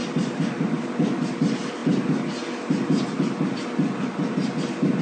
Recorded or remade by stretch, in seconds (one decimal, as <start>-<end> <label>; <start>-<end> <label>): 0.0-5.0 recorded

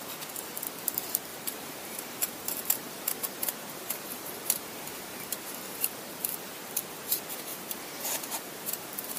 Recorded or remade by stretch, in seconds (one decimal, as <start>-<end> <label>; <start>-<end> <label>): 0.0-1.3 recorded; 1.3-6.6 remade; 6.6-7.5 recorded; 7.5-9.2 remade

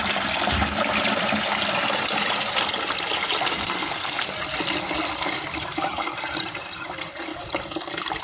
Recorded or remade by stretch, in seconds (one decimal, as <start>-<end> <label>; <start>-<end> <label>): 0.0-3.5 recorded; 3.5-4.3 remade; 4.3-8.2 recorded

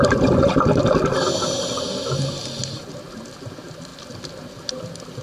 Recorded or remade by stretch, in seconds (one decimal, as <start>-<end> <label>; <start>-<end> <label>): 0.0-5.2 recorded

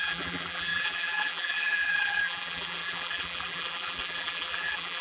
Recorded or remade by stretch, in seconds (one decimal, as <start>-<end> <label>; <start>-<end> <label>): 0.0-5.0 remade

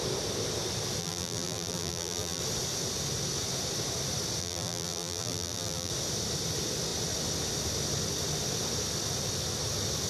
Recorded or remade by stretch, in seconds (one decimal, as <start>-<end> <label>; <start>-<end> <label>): 0.0-1.0 recorded; 1.0-2.4 remade; 2.4-4.4 recorded; 4.4-5.9 remade; 5.9-10.1 recorded

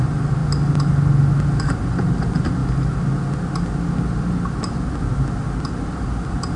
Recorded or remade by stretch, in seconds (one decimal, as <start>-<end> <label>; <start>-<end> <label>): 0.0-6.6 recorded

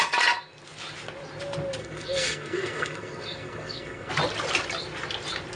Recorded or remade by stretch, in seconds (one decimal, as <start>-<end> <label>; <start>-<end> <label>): 0.0-1.8 recorded; 1.8-4.1 remade; 4.1-5.6 recorded